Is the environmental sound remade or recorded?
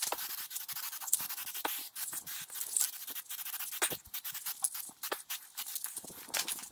recorded